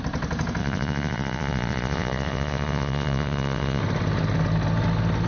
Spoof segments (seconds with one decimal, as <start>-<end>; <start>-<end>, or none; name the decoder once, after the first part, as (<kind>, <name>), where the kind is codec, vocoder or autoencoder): 0.6-3.8 (vocoder, Vocos)